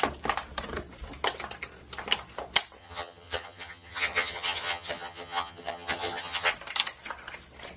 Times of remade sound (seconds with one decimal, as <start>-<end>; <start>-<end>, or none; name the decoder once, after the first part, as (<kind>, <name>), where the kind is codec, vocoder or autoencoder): 2.8-6.5 (vocoder, HiFi-GAN)